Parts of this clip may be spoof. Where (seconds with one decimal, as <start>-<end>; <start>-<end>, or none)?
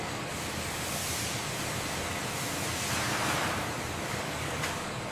0.0-1.0; 4.1-5.1